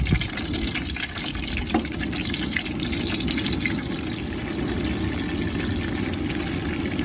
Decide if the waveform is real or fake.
real